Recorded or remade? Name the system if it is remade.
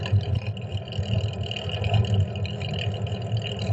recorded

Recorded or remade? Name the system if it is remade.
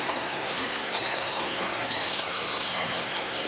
remade, codec, SNAC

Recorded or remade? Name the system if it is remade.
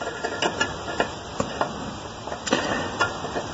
recorded